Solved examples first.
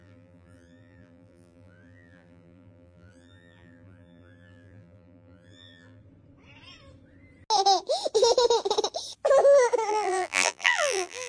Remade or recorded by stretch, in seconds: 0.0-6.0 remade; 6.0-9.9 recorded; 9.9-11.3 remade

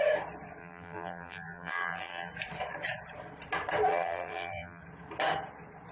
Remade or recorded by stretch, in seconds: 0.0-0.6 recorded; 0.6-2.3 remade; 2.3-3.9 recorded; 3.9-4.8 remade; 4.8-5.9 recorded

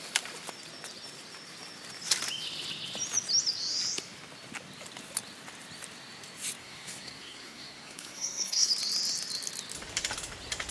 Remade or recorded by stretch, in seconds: 0.0-6.6 recorded; 6.6-8.7 remade; 8.7-10.7 recorded

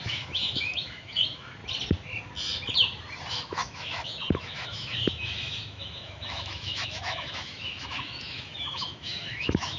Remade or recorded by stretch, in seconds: 0.0-1.6 remade; 1.6-3.3 recorded; 3.3-9.8 remade

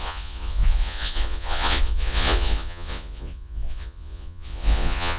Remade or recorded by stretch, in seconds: 0.0-5.2 remade

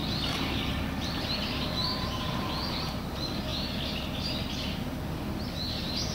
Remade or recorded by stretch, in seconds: 0.0-6.1 recorded

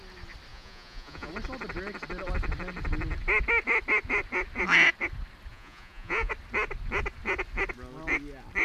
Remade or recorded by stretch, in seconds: 0.0-0.5 recorded; 0.5-1.3 remade; 1.3-5.5 recorded; 5.5-6.3 remade; 6.3-8.6 recorded